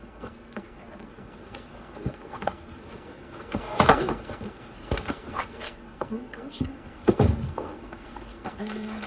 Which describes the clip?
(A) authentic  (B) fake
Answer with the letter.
B